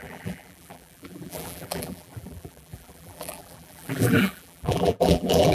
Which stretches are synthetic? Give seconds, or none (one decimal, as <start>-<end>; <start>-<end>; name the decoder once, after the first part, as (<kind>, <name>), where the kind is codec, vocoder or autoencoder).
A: 0.0-5.5 (vocoder, BigVGAN v2)

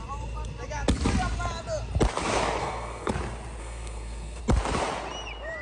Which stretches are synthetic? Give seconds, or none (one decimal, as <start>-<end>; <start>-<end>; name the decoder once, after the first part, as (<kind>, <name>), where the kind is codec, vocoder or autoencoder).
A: 2.6-3.1 (codec, SNAC); 3.6-4.4

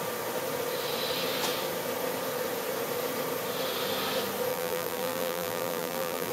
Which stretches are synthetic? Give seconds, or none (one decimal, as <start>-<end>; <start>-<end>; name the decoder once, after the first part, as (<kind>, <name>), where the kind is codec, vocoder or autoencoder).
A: 4.5-6.3 (vocoder, BigVGAN v2)

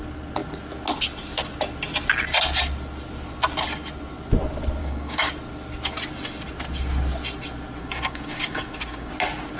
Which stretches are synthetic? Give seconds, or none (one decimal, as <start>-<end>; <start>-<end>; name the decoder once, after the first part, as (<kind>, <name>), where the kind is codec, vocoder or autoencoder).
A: 4.8-5.3 (codec, DAC); 7.8-9.1

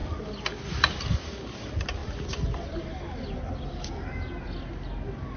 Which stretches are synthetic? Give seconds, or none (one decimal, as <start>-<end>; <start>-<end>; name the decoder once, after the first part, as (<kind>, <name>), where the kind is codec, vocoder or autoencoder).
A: none

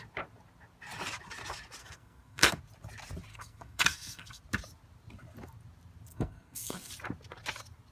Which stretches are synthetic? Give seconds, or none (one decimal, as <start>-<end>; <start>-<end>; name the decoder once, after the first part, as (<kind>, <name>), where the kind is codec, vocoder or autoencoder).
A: 1.8-2.6 (codec, SNAC); 3.3-4.4; 6.1-6.9

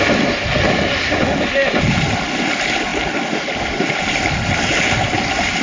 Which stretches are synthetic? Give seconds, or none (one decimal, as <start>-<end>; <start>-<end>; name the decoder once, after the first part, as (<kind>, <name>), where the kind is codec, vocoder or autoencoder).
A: none

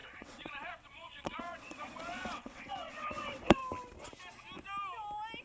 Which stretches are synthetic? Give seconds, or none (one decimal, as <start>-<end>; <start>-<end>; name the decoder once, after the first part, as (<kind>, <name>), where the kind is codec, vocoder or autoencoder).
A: 0.0-3.6 (vocoder, WaveNeXt)